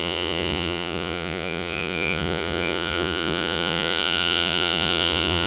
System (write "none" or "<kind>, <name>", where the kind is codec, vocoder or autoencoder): vocoder, Vocos